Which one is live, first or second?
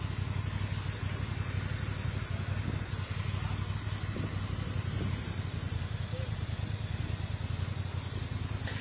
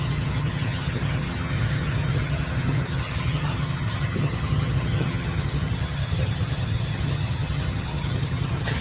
first